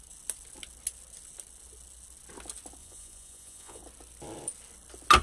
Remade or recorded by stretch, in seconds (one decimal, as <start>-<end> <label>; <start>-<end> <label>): 0.0-2.8 recorded; 2.8-3.8 remade; 3.8-5.2 recorded